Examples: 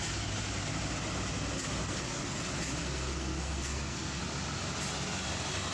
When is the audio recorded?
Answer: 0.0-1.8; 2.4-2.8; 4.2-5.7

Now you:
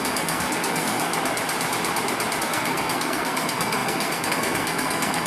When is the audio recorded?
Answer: 1.1-2.4

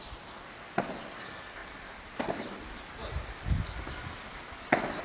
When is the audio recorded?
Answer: 0.0-5.0

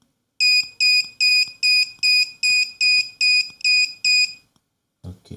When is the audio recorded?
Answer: 0.0-5.4

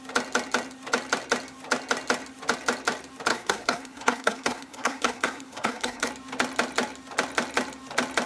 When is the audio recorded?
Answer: 0.0-3.3; 6.1-8.3

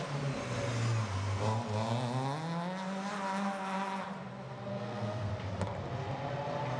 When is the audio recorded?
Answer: 0.0-4.7; 5.3-6.8